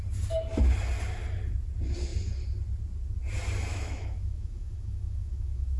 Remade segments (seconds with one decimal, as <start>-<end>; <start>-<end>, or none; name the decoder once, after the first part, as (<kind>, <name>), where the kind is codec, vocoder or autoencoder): 3.7-5.8 (autoencoder, DAC-VAE)

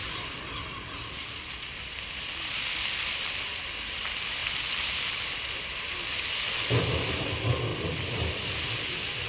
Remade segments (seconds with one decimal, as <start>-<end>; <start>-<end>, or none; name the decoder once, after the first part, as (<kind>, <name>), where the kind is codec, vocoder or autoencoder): 0.0-3.7 (vocoder, BigVGAN v2); 4.4-6.3; 7.7-8.9

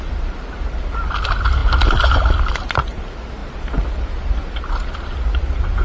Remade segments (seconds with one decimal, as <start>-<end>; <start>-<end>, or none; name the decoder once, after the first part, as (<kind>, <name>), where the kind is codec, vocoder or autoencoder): none

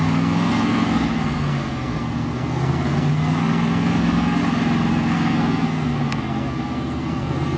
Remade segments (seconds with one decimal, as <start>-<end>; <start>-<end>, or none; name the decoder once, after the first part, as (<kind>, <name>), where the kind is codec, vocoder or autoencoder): 0.0-4.4 (codec, SNAC); 4.9-7.6

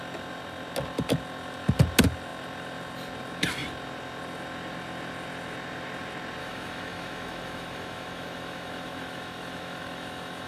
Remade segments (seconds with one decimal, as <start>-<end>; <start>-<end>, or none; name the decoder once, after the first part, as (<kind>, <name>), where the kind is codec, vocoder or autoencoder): 6.4-10.5 (autoencoder, DAC-VAE)

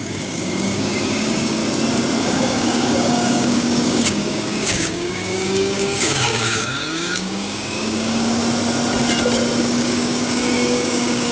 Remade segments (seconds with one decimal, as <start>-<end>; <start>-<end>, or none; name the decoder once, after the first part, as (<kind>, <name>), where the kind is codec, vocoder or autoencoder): 0.0-1.6 (codec, DAC); 2.2-8.4; 9.6-11.3

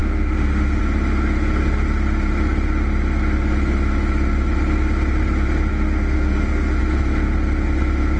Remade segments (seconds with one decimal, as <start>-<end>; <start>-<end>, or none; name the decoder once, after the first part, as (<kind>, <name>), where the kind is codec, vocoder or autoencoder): 0.0-0.8 (autoencoder, DAC-VAE); 5.7-6.8

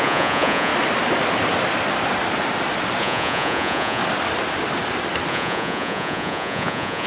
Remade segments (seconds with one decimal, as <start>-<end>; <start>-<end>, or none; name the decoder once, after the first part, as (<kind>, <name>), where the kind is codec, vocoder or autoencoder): 0.0-0.7 (vocoder, Vocos); 3.0-4.0; 5.3-7.1